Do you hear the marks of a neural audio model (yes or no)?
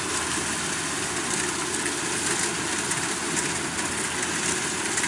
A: no